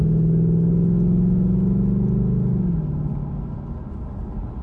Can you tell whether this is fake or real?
real